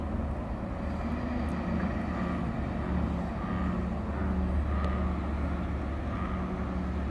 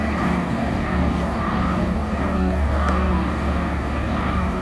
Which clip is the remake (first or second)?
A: second